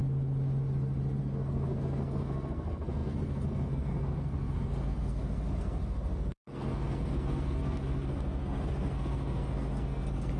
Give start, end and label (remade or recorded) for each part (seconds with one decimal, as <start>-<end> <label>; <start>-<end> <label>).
0.0-1.2 recorded; 1.2-10.4 remade